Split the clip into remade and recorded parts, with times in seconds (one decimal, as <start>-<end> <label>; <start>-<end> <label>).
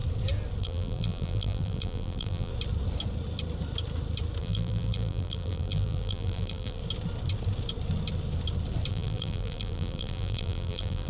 0.0-0.6 recorded; 0.6-2.5 remade; 2.5-4.4 recorded; 4.4-6.8 remade; 6.8-8.9 recorded; 8.9-11.1 remade